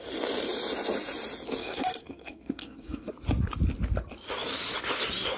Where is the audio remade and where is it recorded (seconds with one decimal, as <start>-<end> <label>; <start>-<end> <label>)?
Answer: 0.0-1.6 recorded; 1.6-3.1 remade; 3.1-5.4 recorded